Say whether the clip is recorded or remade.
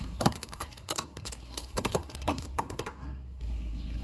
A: remade